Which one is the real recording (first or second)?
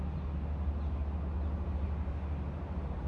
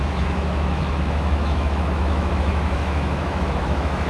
first